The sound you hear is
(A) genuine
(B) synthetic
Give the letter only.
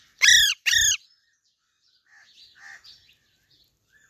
B